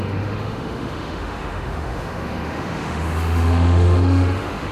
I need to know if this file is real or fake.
fake